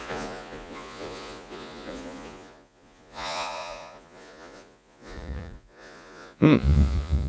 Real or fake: fake